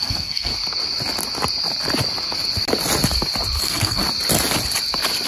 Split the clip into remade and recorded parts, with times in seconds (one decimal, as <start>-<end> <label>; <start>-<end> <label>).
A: 0.0-0.5 remade; 0.5-3.6 recorded; 3.6-4.0 remade; 4.0-5.3 recorded